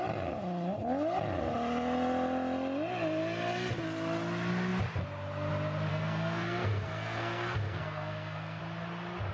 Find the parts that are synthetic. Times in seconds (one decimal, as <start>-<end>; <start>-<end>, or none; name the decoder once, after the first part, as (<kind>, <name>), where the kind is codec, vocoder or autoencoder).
5.9-8.6 (codec, SNAC)